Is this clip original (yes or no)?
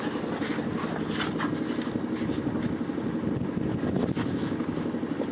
yes